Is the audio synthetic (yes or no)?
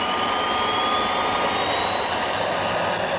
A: no